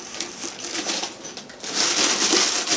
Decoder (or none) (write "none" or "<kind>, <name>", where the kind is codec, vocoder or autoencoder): none